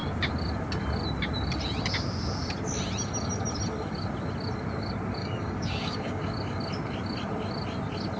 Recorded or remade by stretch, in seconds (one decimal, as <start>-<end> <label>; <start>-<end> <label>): 0.0-5.2 recorded; 5.2-6.2 remade; 6.2-8.2 recorded